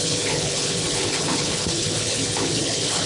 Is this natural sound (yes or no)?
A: no